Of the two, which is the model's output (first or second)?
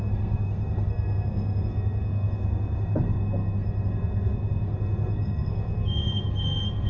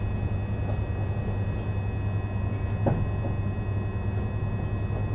first